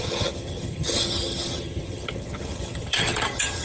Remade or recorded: remade